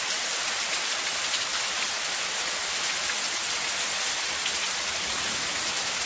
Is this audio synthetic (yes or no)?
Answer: no